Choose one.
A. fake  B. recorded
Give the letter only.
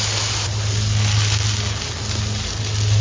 B